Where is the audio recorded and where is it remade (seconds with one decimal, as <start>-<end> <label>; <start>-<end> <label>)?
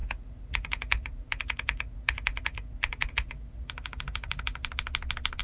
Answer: 0.0-4.6 remade; 4.6-5.4 recorded